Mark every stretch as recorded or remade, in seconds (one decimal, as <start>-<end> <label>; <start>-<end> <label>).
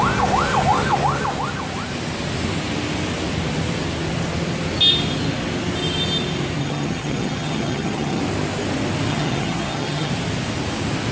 0.0-6.6 recorded; 6.6-8.2 remade; 8.2-9.1 recorded; 9.1-10.1 remade; 10.1-11.1 recorded